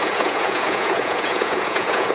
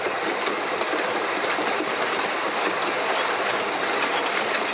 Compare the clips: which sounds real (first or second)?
second